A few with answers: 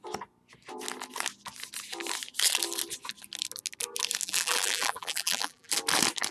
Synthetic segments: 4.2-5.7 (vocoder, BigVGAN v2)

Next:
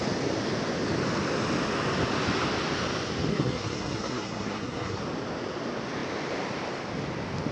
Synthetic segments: 3.3-5.0 (codec, SNAC)

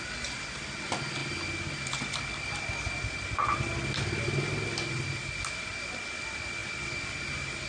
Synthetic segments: none